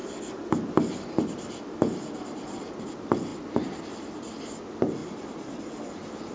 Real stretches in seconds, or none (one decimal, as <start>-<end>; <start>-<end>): 0.0-3.3; 3.9-5.0; 5.6-6.3